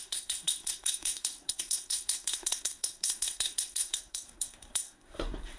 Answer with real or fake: fake